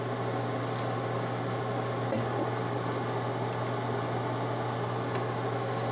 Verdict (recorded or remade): recorded